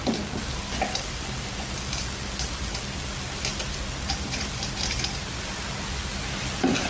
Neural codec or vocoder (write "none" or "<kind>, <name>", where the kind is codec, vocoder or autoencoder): none